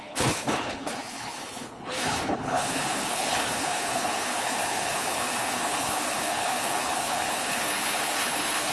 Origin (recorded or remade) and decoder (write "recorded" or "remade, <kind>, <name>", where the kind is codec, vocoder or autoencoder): remade, codec, HILCodec